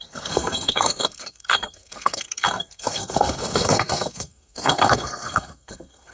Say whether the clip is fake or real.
fake